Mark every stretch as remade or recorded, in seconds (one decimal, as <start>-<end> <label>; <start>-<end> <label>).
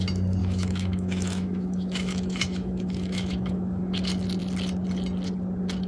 0.0-0.4 recorded; 0.4-3.8 remade; 3.8-5.9 recorded